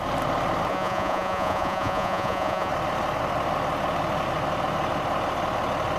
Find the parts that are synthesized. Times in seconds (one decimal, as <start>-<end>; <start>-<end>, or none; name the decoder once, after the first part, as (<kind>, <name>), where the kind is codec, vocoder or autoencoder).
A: 0.7-2.7 (vocoder, Vocos)